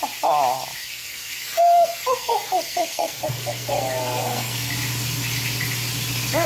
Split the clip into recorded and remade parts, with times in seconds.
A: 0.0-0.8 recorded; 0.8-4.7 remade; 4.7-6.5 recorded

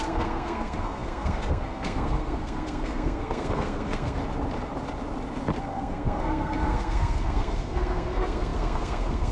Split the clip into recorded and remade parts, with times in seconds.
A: 0.0-4.2 remade; 4.2-5.6 recorded; 5.6-9.3 remade